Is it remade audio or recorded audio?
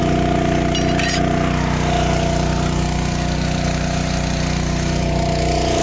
recorded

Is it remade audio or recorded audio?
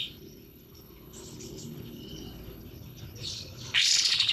remade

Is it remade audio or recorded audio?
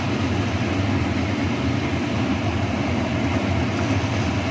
recorded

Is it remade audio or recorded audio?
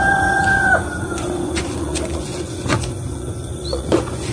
remade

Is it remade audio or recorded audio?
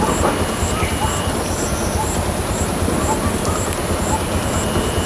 recorded